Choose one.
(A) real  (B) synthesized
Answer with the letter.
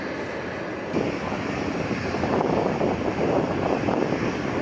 A